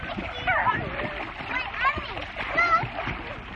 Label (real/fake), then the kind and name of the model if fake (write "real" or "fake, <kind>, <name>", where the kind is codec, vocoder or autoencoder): real